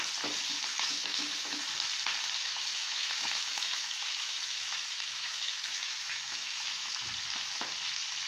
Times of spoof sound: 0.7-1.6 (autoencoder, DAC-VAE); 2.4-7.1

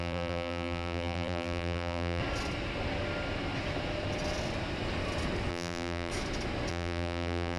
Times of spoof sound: 0.0-2.2 (vocoder, BigVGAN v2); 5.5-6.1; 6.7-7.6